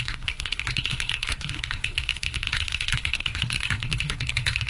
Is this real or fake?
fake